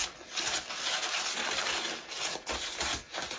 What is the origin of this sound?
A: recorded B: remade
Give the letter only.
A